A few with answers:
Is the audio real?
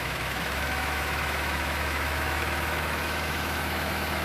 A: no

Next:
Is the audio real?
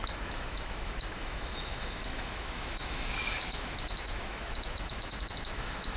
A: no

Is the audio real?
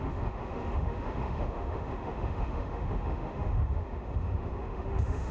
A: no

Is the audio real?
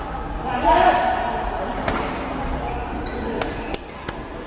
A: yes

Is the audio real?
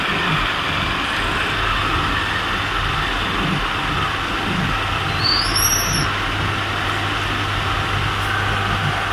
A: yes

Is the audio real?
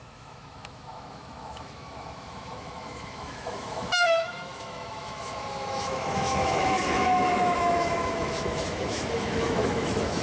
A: no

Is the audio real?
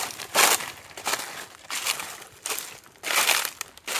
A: yes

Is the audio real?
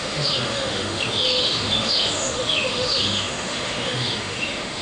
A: no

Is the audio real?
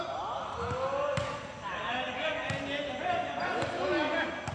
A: yes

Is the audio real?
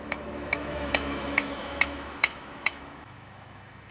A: no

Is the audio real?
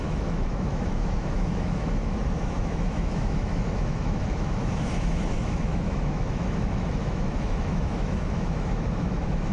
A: no